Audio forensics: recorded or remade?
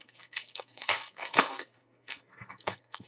remade